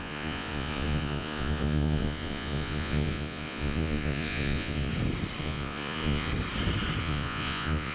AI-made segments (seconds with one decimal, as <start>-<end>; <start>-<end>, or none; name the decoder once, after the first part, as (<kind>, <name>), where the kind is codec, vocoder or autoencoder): 0.0-4.9 (vocoder, Vocos); 5.4-6.3; 7.0-7.9